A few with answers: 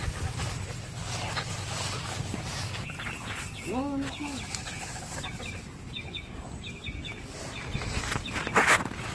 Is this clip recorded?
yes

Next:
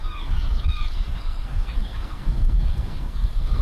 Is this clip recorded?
no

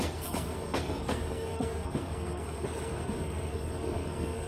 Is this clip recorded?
no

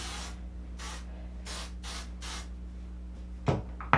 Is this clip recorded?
yes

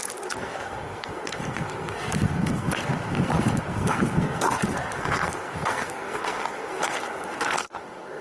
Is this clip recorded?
no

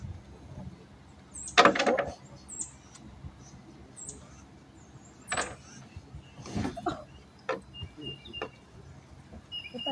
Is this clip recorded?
yes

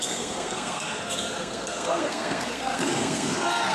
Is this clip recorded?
no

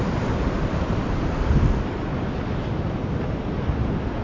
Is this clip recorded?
yes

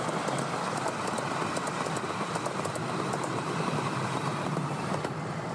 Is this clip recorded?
yes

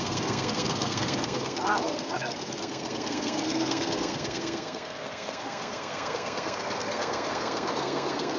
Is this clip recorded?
no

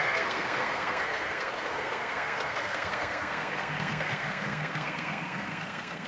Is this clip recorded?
no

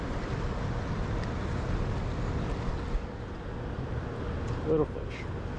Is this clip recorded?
yes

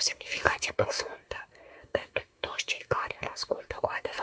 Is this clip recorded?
no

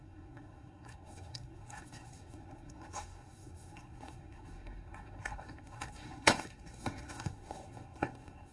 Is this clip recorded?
no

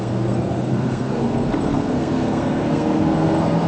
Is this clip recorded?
no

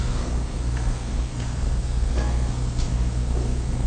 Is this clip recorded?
no